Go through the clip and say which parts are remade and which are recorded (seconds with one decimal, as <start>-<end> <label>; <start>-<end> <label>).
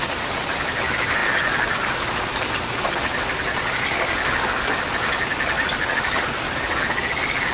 0.0-7.5 recorded